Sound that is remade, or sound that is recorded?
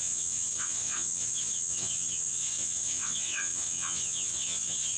remade